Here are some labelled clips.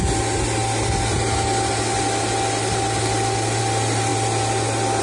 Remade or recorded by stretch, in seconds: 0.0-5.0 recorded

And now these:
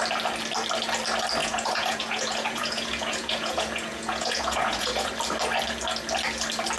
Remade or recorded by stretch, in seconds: 0.0-1.4 recorded; 1.4-5.1 remade; 5.1-6.8 recorded

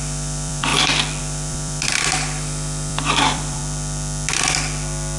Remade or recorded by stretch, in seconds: 0.0-0.7 remade; 0.7-1.2 recorded; 1.2-3.6 remade; 3.6-5.2 recorded

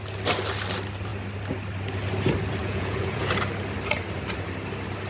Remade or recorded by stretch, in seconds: 0.0-2.6 recorded; 2.6-3.3 remade; 3.3-5.1 recorded

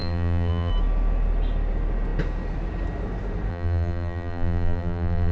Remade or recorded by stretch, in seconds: 0.0-0.7 remade; 0.7-3.5 recorded; 3.5-5.3 remade